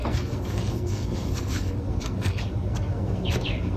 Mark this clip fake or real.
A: fake